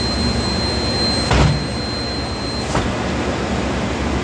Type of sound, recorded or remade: recorded